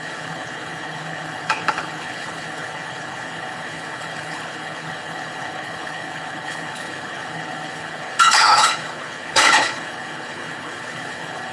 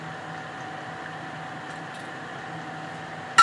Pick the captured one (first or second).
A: second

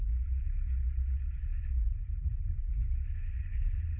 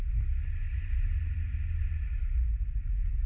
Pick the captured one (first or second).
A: second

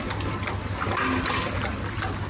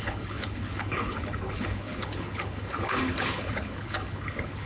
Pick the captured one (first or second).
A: first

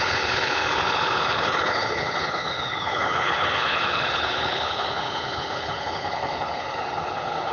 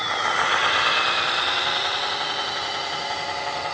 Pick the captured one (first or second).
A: second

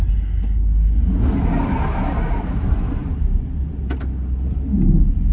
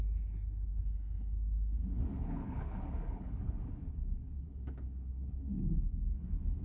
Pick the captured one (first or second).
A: first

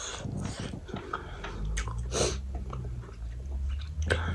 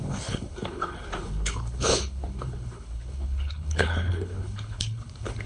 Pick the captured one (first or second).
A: first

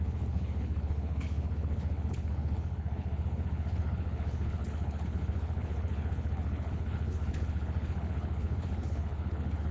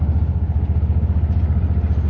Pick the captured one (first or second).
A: second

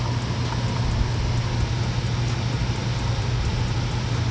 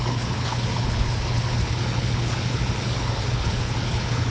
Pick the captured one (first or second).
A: first